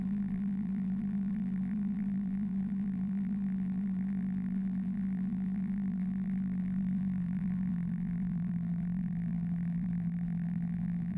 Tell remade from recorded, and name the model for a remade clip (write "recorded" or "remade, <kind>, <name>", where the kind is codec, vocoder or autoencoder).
remade, vocoder, BigVGAN v2